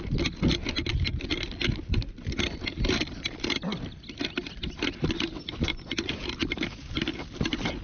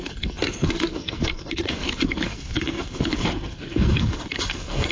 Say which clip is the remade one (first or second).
second